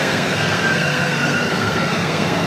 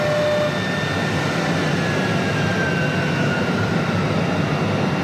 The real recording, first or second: second